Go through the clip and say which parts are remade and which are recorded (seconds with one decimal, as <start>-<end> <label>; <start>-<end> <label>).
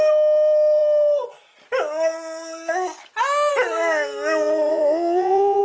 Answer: 0.0-4.7 recorded; 4.7-5.6 remade